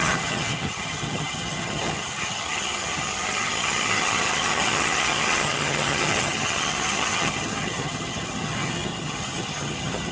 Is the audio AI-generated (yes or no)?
yes